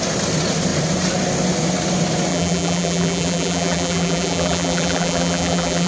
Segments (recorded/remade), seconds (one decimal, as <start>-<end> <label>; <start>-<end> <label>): 0.0-2.3 recorded; 2.3-5.9 remade